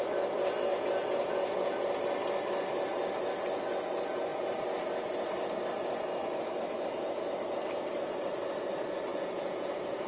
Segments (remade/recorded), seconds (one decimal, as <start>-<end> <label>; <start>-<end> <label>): 0.0-0.7 recorded; 0.7-2.0 remade; 2.0-9.1 recorded; 9.1-10.1 remade